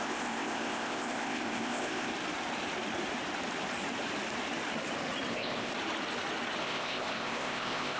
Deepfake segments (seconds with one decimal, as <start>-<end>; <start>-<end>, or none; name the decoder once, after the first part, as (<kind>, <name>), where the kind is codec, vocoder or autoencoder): 0.0-2.1 (codec, ZipCodec); 5.3-5.7; 6.6-8.0